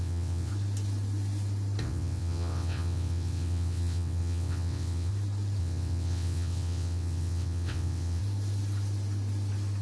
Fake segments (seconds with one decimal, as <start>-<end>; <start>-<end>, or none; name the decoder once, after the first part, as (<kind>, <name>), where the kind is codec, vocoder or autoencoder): 0.0-0.5 (vocoder, WaveNeXt); 1.8-5.1; 5.6-8.2